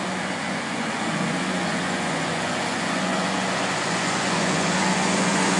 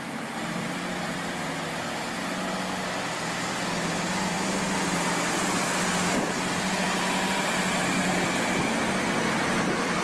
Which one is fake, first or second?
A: first